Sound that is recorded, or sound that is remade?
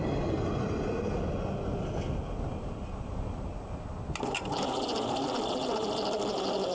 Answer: recorded